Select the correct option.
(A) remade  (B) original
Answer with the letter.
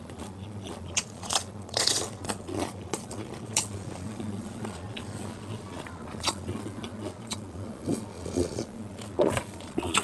A